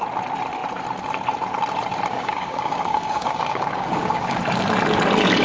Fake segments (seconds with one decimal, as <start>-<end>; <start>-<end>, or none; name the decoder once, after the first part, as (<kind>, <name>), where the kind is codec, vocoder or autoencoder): 2.1-4.4 (codec, DAC)